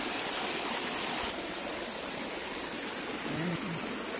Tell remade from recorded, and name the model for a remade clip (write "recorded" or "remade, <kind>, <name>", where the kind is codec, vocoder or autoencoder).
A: recorded